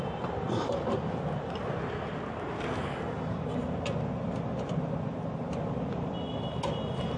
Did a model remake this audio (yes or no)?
no